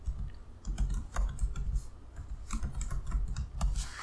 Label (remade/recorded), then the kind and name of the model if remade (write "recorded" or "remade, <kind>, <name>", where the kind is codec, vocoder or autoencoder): recorded